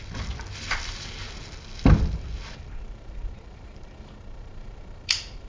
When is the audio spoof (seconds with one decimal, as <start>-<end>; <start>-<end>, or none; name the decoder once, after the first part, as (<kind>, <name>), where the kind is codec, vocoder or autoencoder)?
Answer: none